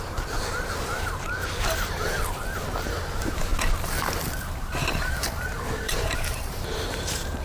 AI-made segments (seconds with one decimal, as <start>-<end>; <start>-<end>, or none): 0.0-0.5; 3.0-3.5; 5.8-7.4